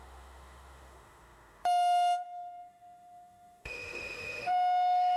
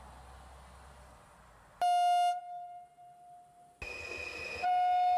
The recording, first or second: second